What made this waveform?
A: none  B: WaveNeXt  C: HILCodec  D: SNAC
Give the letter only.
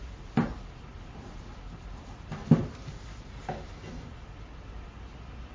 A